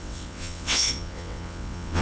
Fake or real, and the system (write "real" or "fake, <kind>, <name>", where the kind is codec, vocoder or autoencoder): fake, vocoder, WaveNeXt